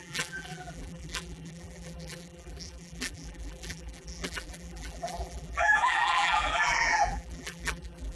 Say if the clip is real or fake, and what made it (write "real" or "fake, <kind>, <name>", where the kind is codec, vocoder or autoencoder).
fake, vocoder, BigVGAN v2